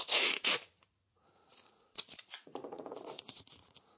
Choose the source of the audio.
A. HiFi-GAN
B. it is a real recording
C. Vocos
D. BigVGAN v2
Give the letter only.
C